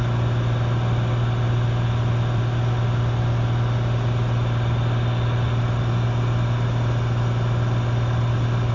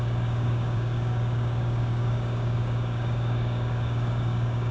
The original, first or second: first